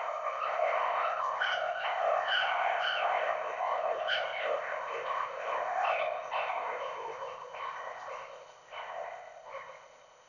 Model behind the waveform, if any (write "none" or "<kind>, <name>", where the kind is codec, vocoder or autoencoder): codec, ZipCodec